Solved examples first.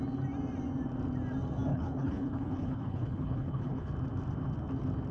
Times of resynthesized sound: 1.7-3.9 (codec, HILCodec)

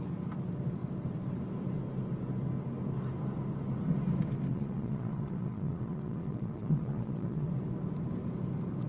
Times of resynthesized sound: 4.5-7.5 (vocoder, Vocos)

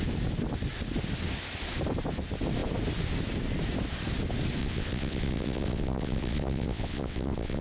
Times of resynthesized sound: 4.6-7.6 (vocoder, WaveNeXt)

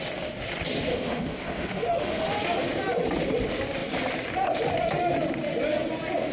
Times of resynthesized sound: 0.9-2.3 (autoencoder, DAC-VAE)

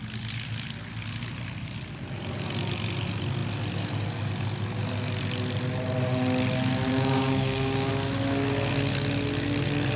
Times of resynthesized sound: 6.9-7.9 (codec, DAC)

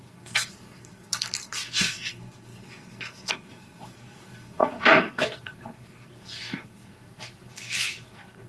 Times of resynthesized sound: 0.0-8.5 (codec, SNAC)